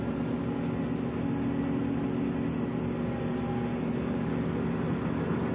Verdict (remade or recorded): recorded